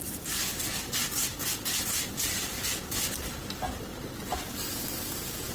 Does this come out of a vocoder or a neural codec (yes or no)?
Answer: no